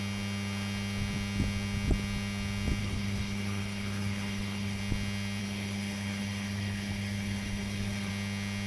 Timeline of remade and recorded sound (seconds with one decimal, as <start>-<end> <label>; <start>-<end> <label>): 0.0-2.8 recorded; 2.8-4.8 remade; 4.8-5.4 recorded; 5.4-8.1 remade; 8.1-8.7 recorded